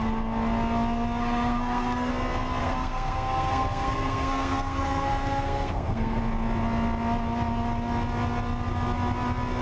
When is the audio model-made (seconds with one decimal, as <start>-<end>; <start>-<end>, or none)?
1.2-2.1; 2.6-6.2